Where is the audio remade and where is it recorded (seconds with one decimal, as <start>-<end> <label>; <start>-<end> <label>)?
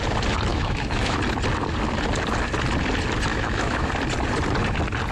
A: 0.0-0.5 recorded; 0.5-1.2 remade; 1.2-3.3 recorded; 3.3-3.9 remade; 3.9-5.1 recorded